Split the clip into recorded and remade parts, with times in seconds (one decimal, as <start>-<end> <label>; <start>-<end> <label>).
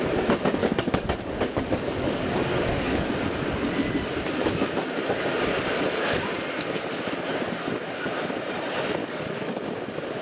0.0-0.6 recorded; 0.6-3.1 remade; 3.1-9.0 recorded; 9.0-9.6 remade; 9.6-10.2 recorded